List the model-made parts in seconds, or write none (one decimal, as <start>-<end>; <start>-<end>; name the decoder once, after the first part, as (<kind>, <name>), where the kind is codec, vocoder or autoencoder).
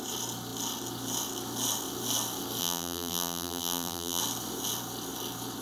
2.6-4.2 (vocoder, BigVGAN v2)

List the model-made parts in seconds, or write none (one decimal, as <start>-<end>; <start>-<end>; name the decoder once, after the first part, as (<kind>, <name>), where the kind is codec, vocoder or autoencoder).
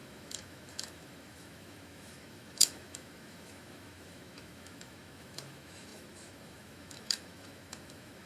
0.0-8.3 (autoencoder, DAC-VAE)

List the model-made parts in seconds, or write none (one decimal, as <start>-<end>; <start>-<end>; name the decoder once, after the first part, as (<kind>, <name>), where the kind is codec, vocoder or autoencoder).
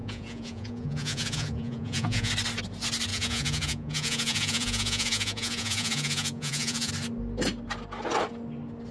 0.0-2.3 (vocoder, Vocos); 3.1-6.9